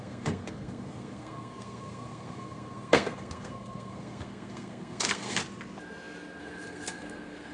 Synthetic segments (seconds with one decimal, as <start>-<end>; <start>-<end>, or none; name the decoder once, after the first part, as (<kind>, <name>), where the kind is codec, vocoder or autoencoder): 0.0-5.4 (codec, SNAC); 6.4-7.5